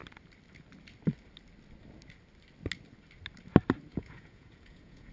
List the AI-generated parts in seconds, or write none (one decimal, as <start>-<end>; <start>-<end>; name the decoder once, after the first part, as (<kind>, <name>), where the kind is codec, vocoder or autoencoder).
3.9-5.1 (vocoder, Vocos)